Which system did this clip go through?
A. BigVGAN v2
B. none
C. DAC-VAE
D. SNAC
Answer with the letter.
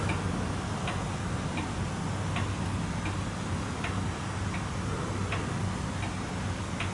B